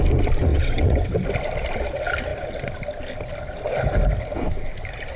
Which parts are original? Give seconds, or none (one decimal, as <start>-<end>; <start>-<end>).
0.0-0.5; 1.1-5.2